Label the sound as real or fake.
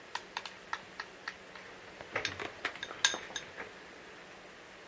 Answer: real